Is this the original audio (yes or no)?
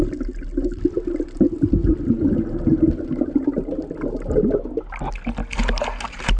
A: yes